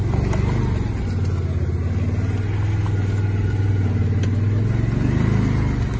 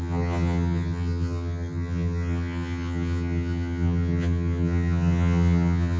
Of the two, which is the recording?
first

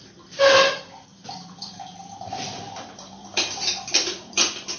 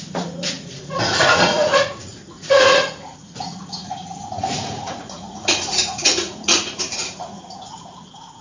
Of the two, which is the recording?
first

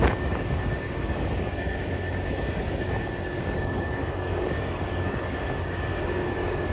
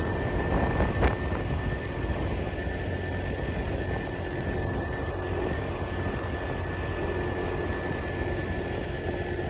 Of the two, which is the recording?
second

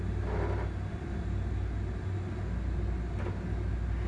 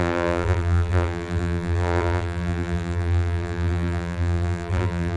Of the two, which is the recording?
first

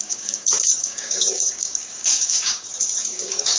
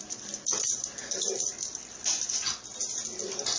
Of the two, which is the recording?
second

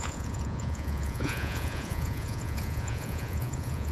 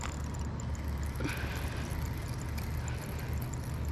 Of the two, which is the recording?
second